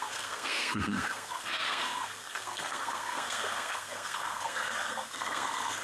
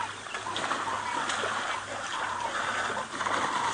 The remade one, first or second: first